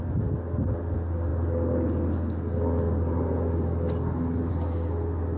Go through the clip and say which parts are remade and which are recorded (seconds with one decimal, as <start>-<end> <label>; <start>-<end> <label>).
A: 0.0-5.4 recorded